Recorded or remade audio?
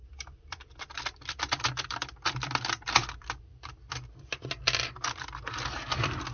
remade